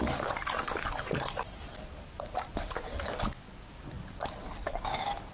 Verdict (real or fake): real